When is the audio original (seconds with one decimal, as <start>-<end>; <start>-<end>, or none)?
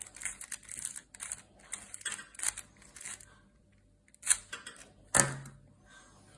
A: 0.0-6.4